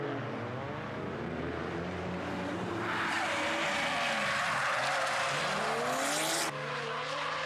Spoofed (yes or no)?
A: no